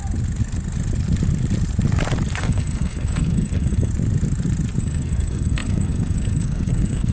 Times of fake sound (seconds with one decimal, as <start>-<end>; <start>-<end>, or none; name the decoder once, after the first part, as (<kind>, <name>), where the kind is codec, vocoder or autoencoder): 2.4-3.9 (codec, SNAC); 4.8-7.1